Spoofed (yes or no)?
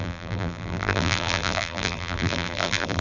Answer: yes